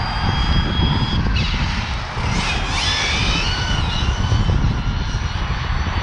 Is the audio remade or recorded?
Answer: recorded